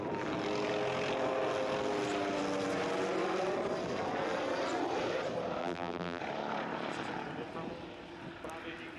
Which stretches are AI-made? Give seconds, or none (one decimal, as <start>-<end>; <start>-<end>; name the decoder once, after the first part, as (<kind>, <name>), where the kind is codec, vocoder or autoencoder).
5.6-6.2 (vocoder, BigVGAN v2)

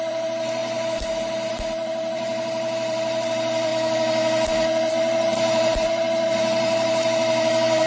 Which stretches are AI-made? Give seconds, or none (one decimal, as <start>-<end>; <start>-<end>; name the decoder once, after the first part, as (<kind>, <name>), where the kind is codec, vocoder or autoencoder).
0.0-3.7 (vocoder, BigVGAN v2); 4.9-7.9

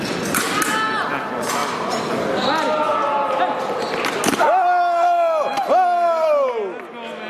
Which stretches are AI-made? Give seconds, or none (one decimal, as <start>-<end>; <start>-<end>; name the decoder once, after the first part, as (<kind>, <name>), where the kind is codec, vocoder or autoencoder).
1.6-2.1 (vocoder, BigVGAN v2)

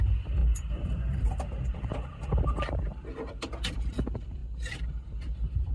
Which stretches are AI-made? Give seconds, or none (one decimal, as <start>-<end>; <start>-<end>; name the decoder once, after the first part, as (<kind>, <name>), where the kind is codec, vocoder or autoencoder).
0.0-5.7 (vocoder, BigVGAN v2)

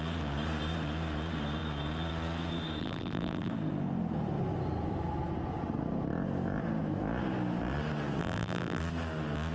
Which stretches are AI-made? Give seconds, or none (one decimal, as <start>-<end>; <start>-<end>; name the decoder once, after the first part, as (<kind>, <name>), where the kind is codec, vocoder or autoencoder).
2.8-3.5 (vocoder, BigVGAN v2); 8.2-8.8

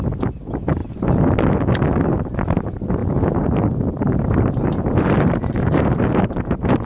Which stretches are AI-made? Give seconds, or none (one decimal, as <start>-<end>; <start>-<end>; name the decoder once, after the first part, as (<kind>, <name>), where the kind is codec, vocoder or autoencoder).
0.0-0.8 (vocoder, BigVGAN v2); 2.1-6.8

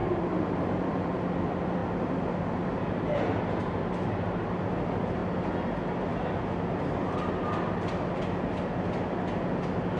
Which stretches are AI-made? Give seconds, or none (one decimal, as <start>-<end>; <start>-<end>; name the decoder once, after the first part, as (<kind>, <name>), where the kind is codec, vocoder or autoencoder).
0.0-1.3 (vocoder, BigVGAN v2)

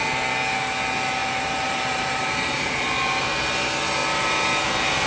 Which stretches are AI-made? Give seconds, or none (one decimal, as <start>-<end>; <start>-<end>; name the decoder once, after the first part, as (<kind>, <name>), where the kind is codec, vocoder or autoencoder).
1.2-3.2 (vocoder, BigVGAN v2)